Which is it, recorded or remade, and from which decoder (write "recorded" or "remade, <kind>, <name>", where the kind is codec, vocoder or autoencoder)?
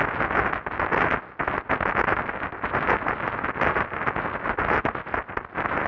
recorded